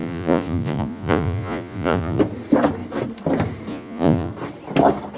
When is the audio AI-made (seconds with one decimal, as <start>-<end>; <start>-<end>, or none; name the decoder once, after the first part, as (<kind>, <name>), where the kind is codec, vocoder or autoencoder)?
0.0-2.2 (vocoder, Vocos); 3.7-4.3